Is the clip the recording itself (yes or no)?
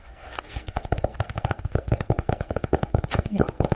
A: no